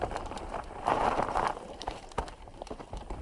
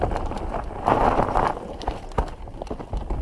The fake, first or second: first